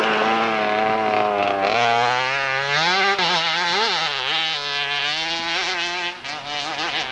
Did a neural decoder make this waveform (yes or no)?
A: no